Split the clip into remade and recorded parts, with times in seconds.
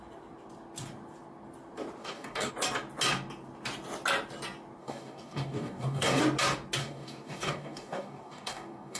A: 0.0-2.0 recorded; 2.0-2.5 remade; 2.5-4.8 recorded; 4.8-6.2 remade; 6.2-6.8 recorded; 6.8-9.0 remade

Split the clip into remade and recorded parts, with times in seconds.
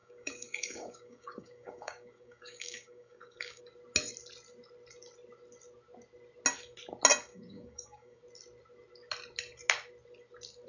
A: 0.0-3.6 remade; 3.6-7.3 recorded; 7.3-8.2 remade; 8.2-10.7 recorded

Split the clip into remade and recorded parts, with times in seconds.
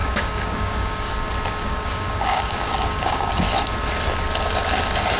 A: 0.0-1.1 remade; 1.1-1.6 recorded; 1.6-3.3 remade; 3.3-5.2 recorded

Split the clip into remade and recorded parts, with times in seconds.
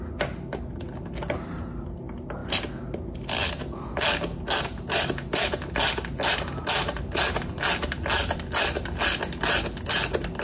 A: 0.0-10.4 recorded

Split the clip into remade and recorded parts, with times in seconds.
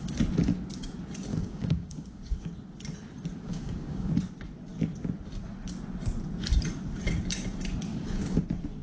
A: 0.0-1.3 recorded; 1.3-2.5 remade; 2.5-3.5 recorded; 3.5-4.1 remade; 4.1-7.9 recorded; 7.9-8.4 remade; 8.4-8.8 recorded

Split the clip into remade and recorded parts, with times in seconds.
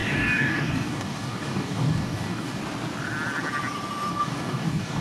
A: 0.0-2.6 remade; 2.6-4.1 recorded; 4.1-5.0 remade